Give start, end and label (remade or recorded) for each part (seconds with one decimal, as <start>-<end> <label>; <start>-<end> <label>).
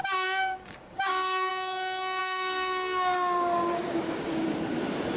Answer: 0.0-1.5 remade; 1.5-2.2 recorded; 2.2-4.5 remade; 4.5-5.2 recorded